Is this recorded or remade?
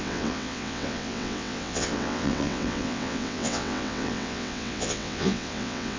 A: remade